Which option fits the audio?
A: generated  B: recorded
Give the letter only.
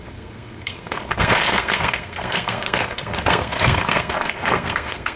A